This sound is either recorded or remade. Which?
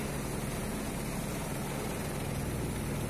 recorded